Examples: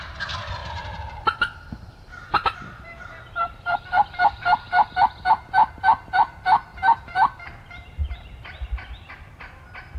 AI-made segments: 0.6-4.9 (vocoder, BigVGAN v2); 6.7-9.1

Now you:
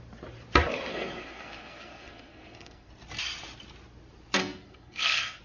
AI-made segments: 0.9-2.9 (codec, SNAC); 4.4-5.4

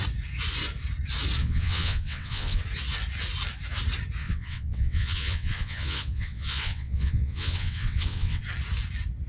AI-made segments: 1.4-2.6 (vocoder, WaveNeXt); 4.2-8.4

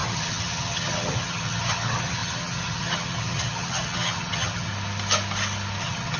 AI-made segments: 0.0-4.7 (vocoder, HiFi-GAN); 5.8-6.2

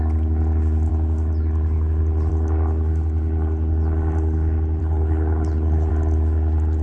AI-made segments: 4.8-5.9 (codec, HILCodec)

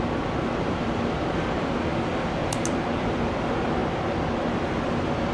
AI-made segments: none

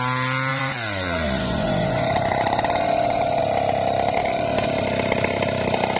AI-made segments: 0.5-3.4 (vocoder, Vocos); 4.2-4.7